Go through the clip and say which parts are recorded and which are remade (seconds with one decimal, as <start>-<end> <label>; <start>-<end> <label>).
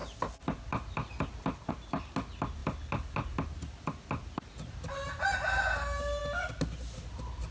0.0-7.5 recorded